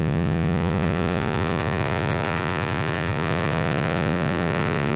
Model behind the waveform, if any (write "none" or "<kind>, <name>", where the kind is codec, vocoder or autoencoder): vocoder, Vocos